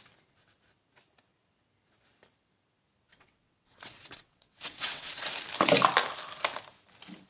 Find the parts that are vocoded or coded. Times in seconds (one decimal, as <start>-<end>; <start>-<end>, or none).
3.1-5.3